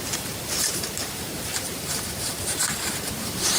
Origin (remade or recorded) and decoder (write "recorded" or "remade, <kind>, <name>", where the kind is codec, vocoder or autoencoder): remade, vocoder, BigVGAN v2